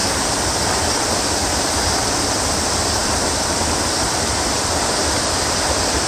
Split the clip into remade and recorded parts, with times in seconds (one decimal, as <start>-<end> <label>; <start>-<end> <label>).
0.0-1.4 recorded; 1.4-2.5 remade; 2.5-3.0 recorded; 3.0-6.1 remade